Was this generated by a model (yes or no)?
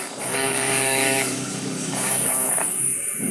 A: yes